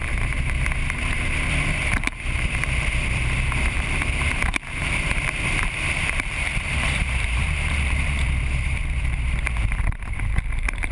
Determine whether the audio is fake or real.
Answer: fake